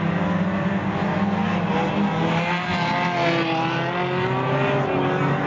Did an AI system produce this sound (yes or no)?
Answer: no